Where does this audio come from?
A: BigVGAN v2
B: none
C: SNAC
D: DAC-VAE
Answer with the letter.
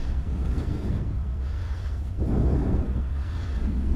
C